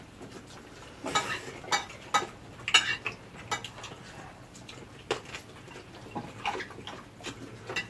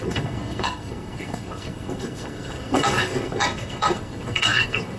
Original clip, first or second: first